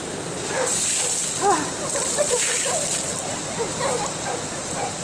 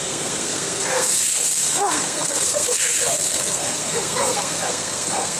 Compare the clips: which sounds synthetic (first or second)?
second